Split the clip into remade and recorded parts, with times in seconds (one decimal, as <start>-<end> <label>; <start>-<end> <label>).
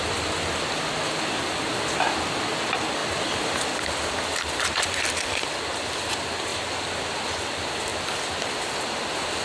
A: 0.0-3.0 recorded; 3.0-6.1 remade; 6.1-9.4 recorded